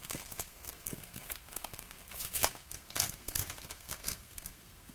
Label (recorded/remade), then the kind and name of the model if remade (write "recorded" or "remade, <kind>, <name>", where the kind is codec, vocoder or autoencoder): remade, codec, SNAC